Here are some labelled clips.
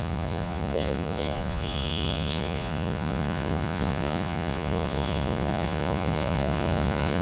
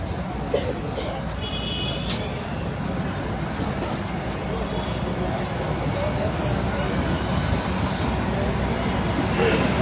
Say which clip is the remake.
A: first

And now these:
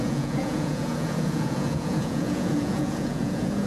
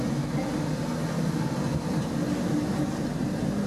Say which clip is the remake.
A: first